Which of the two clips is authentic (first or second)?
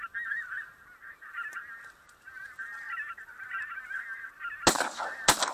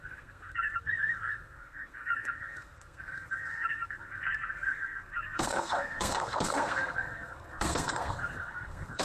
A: first